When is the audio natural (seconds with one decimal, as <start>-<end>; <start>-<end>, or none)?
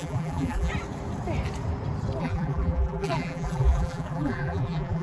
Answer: 0.7-2.2